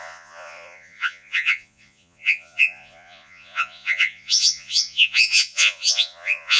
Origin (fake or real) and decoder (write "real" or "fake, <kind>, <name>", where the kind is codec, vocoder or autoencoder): fake, vocoder, Vocos